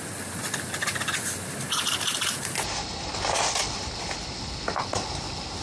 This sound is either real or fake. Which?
real